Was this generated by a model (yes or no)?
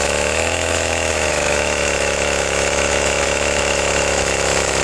yes